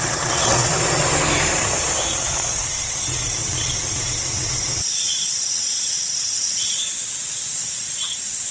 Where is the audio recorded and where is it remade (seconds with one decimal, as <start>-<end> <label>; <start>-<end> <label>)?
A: 0.0-0.7 remade; 0.7-2.1 recorded; 2.1-8.5 remade

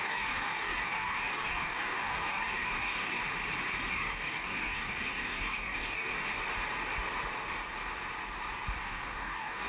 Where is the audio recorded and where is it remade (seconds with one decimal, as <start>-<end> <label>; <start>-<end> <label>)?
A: 0.0-3.2 remade; 3.2-3.9 recorded; 3.9-6.1 remade; 6.1-8.8 recorded; 8.8-9.7 remade

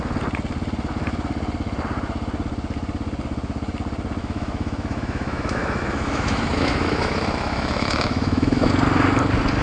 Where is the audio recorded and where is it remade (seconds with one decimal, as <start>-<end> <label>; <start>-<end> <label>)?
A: 0.0-4.2 recorded; 4.2-8.7 remade; 8.7-9.6 recorded

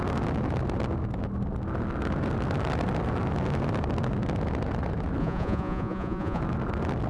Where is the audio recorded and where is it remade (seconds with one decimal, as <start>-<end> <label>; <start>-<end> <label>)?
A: 0.0-5.2 recorded; 5.2-6.4 remade; 6.4-7.1 recorded

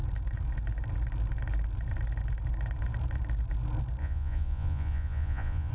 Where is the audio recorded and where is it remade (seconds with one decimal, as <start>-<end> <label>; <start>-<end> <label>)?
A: 0.0-4.0 recorded; 4.0-5.7 remade

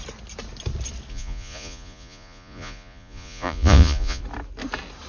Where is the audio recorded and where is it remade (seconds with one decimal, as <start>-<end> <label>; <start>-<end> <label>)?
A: 0.0-1.1 recorded; 1.1-4.2 remade; 4.2-5.1 recorded

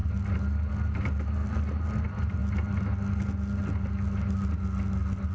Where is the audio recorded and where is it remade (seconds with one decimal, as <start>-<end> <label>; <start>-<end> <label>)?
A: 0.0-5.3 recorded

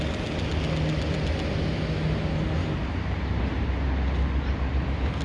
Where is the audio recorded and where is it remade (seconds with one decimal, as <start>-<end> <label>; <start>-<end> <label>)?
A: 0.0-2.6 recorded; 2.6-3.7 remade; 3.7-5.2 recorded